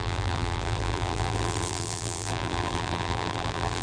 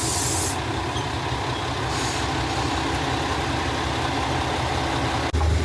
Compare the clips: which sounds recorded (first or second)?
second